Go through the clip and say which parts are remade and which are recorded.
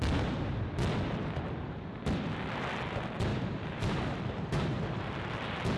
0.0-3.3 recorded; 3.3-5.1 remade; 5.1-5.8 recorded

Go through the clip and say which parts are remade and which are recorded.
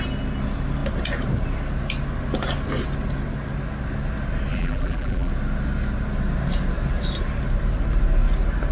0.0-4.5 recorded; 4.5-5.3 remade; 5.3-8.7 recorded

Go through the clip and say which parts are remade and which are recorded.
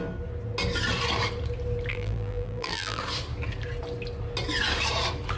0.0-1.9 recorded; 1.9-3.0 remade; 3.0-5.4 recorded